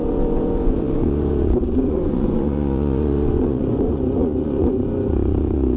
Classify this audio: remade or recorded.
remade